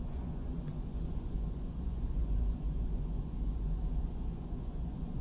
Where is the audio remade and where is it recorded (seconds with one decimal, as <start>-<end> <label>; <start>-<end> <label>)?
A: 0.0-5.2 remade